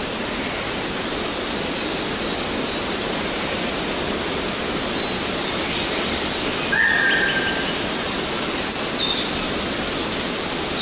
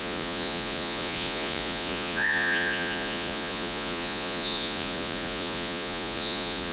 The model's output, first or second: second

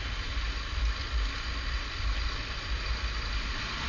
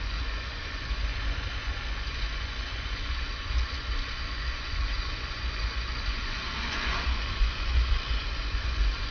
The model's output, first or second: second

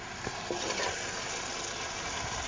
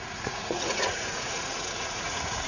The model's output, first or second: second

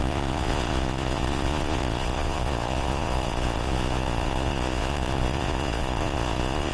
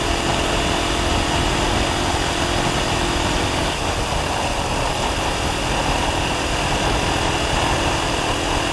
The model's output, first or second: first